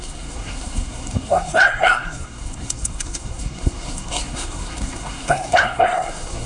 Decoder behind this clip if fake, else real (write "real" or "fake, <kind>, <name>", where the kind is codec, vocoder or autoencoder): fake, codec, SNAC